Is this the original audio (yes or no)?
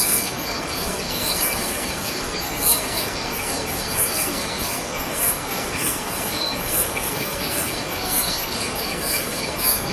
no